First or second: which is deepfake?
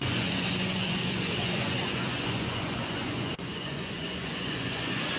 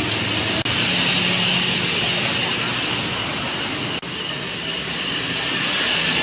first